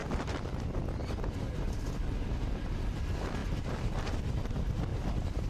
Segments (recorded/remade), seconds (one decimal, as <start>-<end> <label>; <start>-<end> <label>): 0.0-0.5 remade; 0.5-1.0 recorded; 1.0-1.5 remade; 1.5-3.4 recorded; 3.4-4.2 remade; 4.2-4.9 recorded; 4.9-5.5 remade